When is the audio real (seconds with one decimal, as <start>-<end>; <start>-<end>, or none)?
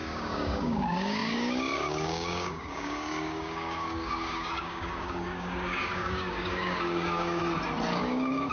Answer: 7.4-8.0